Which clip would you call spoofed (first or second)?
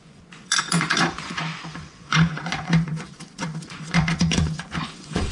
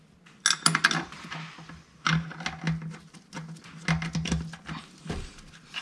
first